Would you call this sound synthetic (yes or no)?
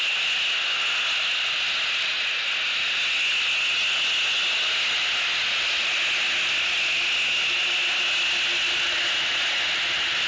no